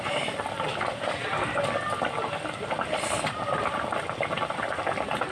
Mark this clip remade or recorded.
recorded